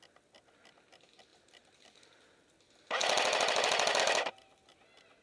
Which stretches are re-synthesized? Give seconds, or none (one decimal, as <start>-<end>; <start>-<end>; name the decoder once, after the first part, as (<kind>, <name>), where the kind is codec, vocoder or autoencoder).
none